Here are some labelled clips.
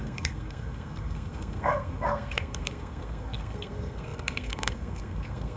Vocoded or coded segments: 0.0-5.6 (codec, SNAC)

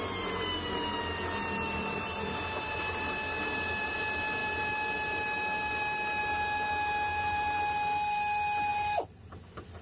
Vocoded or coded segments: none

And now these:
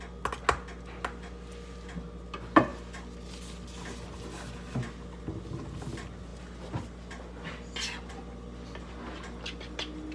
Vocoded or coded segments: none

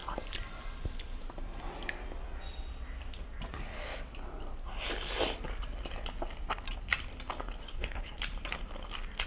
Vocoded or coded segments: 7.6-8.2 (codec, SNAC)

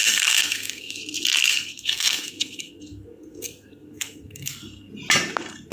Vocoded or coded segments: 0.0-1.0 (codec, SNAC); 1.5-4.9